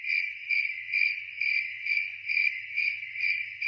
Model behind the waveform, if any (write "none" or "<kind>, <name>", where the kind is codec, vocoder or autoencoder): vocoder, Vocos